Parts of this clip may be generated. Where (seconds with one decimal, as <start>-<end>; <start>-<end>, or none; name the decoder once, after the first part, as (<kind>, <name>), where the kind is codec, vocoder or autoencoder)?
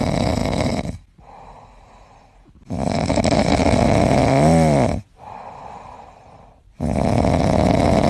3.6-6.8 (vocoder, BigVGAN v2)